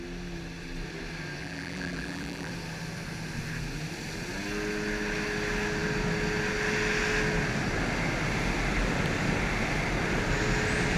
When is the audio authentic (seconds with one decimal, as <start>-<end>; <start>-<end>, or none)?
0.0-1.4; 2.5-11.0